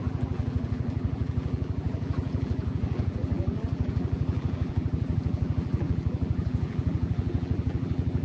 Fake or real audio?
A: fake